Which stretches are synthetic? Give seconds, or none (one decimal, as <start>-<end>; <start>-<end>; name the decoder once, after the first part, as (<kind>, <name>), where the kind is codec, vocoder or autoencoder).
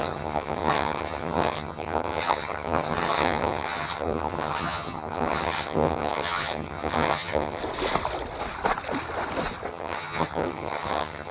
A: 0.0-7.6 (vocoder, HiFi-GAN); 9.7-11.3